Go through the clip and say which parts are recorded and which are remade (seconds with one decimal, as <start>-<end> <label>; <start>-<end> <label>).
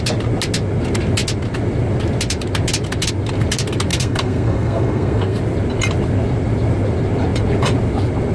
0.0-3.9 recorded; 3.9-5.4 remade; 5.4-8.3 recorded